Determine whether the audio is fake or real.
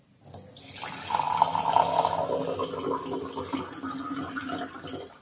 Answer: real